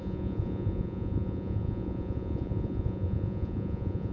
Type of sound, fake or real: fake